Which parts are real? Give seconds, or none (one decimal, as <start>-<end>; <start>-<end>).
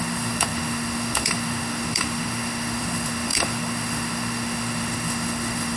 none